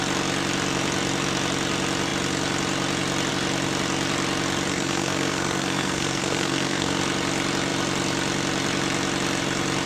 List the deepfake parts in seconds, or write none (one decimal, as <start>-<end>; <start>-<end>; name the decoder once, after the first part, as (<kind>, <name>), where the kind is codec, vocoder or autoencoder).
4.7-7.0 (codec, SNAC)